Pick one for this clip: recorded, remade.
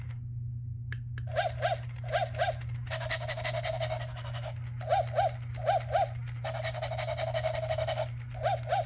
recorded